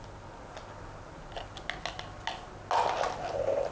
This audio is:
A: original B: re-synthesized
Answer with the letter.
A